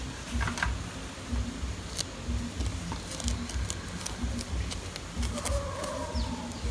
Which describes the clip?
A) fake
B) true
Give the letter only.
B